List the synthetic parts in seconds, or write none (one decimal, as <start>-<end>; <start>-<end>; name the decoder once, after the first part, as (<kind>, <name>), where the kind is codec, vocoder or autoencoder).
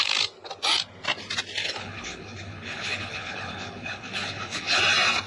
1.6-4.8 (codec, HILCodec)